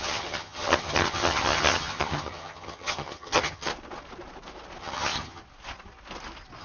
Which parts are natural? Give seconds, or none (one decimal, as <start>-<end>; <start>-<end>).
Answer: 3.7-4.8; 5.4-6.6